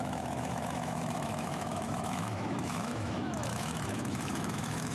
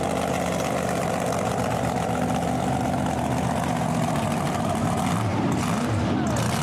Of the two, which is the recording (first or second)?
second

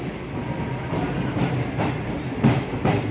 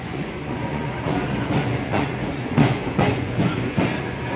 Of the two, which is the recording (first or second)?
first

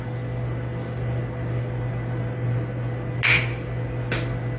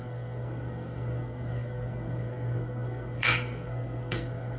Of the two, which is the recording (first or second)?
first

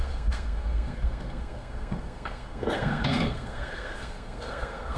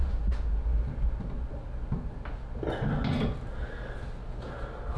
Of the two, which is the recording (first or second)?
second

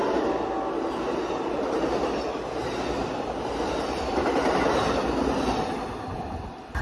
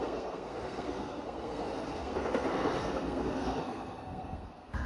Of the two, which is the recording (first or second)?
first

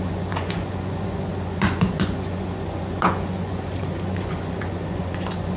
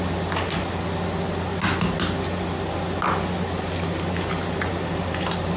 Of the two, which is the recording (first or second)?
second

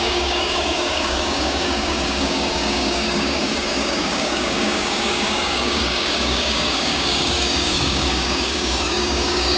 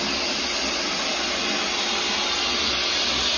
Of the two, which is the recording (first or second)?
second